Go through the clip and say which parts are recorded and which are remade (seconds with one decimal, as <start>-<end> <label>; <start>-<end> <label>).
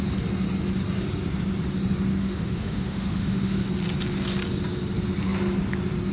0.0-2.2 recorded; 2.2-3.7 remade; 3.7-6.1 recorded